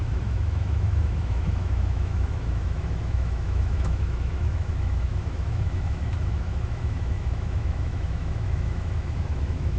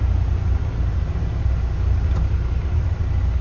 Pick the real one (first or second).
second